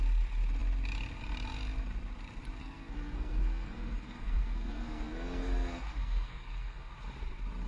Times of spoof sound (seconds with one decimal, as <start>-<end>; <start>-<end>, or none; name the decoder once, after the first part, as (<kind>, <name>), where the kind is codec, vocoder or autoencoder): 2.6-6.9 (codec, SNAC)